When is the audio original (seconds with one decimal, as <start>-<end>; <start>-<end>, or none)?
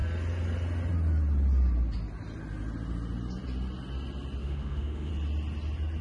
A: 0.0-4.4; 5.1-6.0